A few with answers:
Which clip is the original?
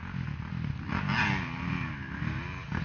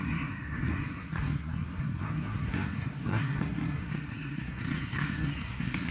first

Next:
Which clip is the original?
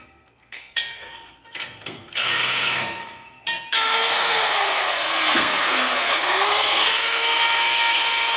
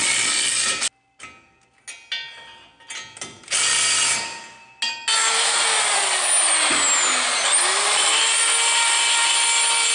second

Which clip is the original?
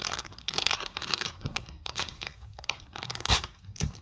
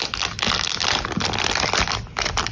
second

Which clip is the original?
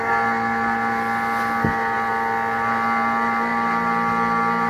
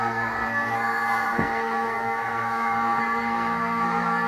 first